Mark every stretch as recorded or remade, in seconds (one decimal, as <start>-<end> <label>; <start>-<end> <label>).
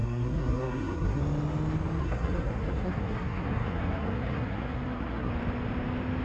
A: 0.0-1.2 remade; 1.2-2.0 recorded; 2.0-5.3 remade; 5.3-6.2 recorded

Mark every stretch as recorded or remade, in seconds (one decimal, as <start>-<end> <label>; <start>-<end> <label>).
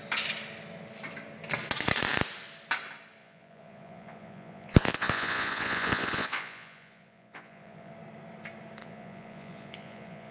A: 0.0-3.2 recorded; 3.2-7.9 remade; 7.9-8.8 recorded; 8.8-10.3 remade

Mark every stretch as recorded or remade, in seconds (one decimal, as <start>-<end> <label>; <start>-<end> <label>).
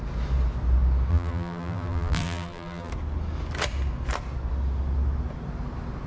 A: 0.0-1.1 recorded; 1.1-2.9 remade; 2.9-6.1 recorded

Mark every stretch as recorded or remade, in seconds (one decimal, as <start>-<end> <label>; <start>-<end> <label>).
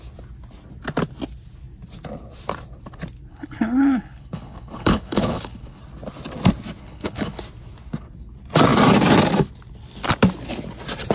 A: 0.0-3.3 recorded; 3.3-5.8 remade; 5.8-6.8 recorded; 6.8-7.4 remade; 7.4-11.1 recorded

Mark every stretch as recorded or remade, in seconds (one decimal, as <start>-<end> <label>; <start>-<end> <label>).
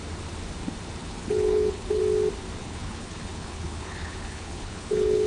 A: 0.0-1.0 recorded; 1.0-2.0 remade; 2.0-2.6 recorded; 2.6-5.3 remade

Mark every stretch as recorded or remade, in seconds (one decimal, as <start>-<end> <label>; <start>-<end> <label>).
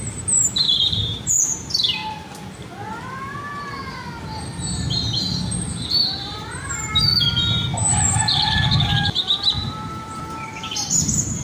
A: 0.0-2.0 remade; 2.0-6.2 recorded; 6.2-11.4 remade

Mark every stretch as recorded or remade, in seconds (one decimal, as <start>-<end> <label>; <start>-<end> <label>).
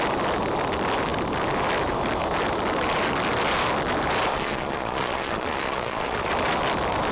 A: 0.0-4.3 recorded; 4.3-6.3 remade; 6.3-7.1 recorded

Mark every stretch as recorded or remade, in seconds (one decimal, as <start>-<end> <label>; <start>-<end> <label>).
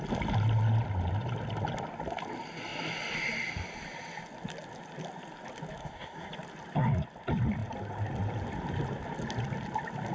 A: 0.0-5.8 recorded; 5.8-6.3 remade; 6.3-10.1 recorded